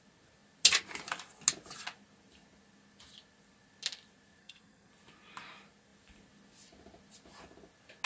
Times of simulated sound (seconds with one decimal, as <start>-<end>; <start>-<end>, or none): 4.4-4.9